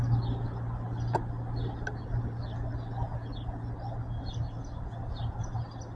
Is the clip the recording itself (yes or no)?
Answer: yes